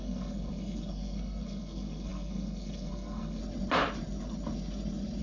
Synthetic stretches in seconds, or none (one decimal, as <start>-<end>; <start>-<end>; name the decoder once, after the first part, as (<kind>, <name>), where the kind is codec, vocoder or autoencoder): 0.0-3.4 (codec, SNAC)